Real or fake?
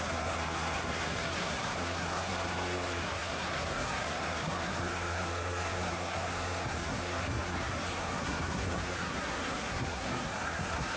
fake